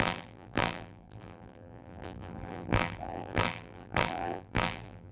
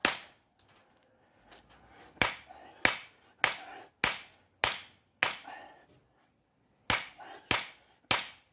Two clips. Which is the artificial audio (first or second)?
first